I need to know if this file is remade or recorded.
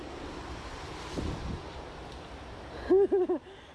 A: recorded